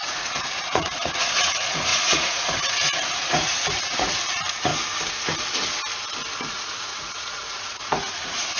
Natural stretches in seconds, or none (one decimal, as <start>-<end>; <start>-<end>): 4.7-6.4